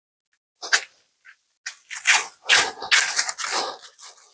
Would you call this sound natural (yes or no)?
yes